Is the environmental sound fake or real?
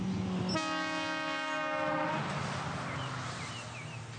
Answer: real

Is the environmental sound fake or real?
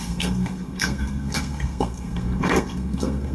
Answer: fake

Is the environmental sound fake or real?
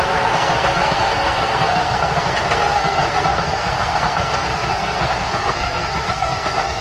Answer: fake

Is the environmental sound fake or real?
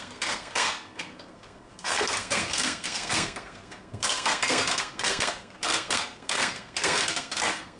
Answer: fake